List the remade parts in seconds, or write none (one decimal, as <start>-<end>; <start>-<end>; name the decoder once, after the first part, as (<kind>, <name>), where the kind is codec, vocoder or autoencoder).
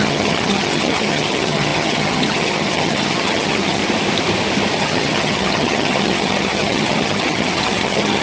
0.0-3.8 (vocoder, HiFi-GAN); 4.8-8.2